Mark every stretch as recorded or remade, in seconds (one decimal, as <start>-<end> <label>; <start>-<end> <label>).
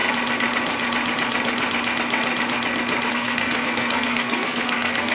0.0-3.1 recorded; 3.1-5.1 remade